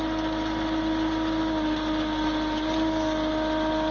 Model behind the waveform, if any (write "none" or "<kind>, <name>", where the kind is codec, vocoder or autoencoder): none